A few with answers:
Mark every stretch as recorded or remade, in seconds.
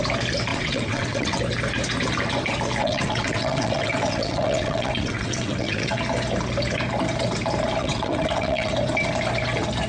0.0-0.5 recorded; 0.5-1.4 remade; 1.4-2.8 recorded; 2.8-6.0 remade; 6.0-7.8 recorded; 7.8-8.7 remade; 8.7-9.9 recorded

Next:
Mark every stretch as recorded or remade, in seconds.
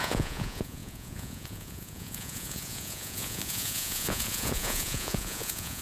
0.0-5.8 remade